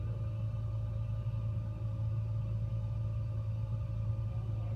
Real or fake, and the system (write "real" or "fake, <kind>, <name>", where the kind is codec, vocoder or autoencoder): real